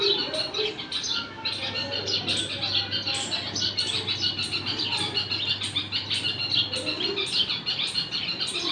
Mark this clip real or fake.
real